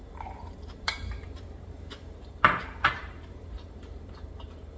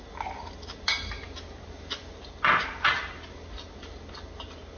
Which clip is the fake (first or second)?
first